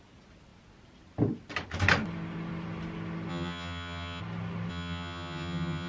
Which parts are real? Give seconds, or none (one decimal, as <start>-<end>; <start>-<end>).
0.0-3.3; 4.2-4.7